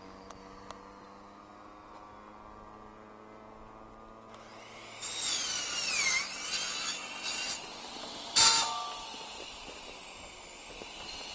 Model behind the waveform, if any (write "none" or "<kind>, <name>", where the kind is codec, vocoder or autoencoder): none